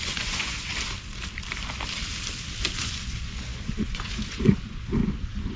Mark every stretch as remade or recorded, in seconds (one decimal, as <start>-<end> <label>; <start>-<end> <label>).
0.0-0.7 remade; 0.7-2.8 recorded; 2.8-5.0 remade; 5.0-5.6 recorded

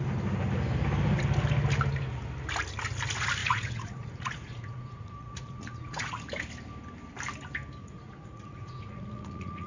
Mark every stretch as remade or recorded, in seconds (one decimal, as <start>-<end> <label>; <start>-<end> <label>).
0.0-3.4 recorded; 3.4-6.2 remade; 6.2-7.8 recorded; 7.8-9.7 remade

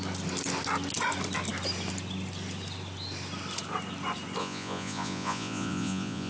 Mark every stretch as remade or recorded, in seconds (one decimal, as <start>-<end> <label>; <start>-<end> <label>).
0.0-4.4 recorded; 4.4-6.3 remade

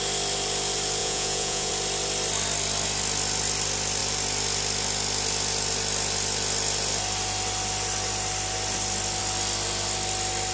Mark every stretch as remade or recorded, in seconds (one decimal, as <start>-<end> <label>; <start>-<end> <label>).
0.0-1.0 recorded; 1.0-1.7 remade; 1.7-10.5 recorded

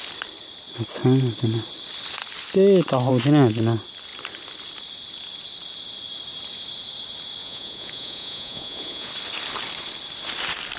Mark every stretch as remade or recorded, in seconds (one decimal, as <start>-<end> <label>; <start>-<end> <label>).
0.0-7.4 recorded; 7.4-9.1 remade; 9.1-10.8 recorded

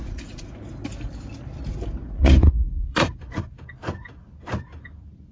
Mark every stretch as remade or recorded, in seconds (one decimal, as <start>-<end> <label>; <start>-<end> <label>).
0.0-0.5 remade; 0.5-2.0 recorded; 2.0-3.4 remade; 3.4-5.3 recorded